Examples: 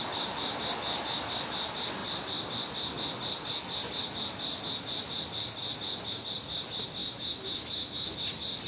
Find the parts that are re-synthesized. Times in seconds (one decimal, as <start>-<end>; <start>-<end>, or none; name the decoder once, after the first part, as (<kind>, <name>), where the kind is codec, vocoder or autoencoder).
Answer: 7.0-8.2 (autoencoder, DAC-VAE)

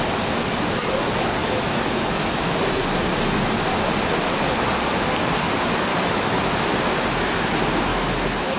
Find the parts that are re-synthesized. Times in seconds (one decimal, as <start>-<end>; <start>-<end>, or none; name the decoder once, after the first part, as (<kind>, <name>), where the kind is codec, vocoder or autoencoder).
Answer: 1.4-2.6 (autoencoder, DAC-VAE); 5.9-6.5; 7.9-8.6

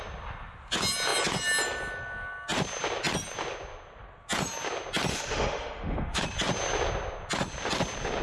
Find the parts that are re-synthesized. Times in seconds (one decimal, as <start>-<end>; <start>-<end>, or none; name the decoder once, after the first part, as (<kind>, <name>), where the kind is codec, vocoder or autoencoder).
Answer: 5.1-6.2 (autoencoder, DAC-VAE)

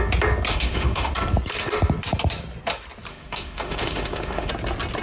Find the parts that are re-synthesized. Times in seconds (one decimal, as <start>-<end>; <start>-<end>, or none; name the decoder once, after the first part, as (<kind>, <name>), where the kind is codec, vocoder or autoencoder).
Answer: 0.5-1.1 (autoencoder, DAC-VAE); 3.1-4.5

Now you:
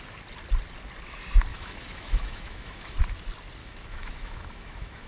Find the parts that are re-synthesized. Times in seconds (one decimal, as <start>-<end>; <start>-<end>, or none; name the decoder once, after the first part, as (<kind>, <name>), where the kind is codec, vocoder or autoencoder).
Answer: 1.5-3.0 (autoencoder, DAC-VAE); 3.6-5.1

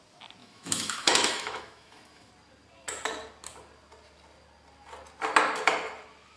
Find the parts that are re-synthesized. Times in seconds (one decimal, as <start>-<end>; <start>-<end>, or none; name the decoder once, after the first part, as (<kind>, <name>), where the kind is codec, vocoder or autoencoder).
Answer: 0.4-2.3 (autoencoder, DAC-VAE)